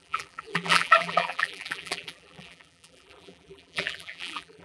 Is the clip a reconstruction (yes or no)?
yes